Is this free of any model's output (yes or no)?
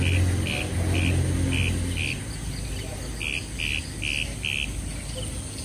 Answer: yes